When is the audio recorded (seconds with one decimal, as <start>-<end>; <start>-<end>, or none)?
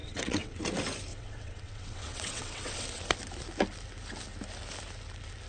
0.6-1.1; 3.0-5.5